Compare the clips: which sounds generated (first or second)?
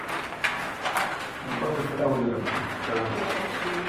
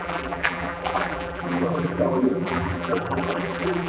second